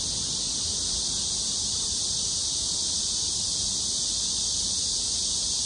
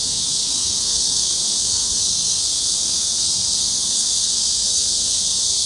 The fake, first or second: second